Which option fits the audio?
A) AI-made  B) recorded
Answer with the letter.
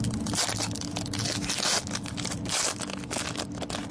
B